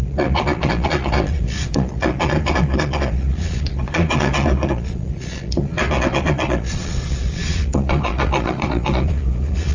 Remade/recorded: remade